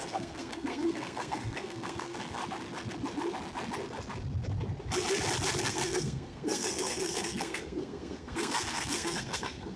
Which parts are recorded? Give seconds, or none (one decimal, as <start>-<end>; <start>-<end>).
2.4-5.6